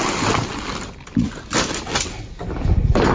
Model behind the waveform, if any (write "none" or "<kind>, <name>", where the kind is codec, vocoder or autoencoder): none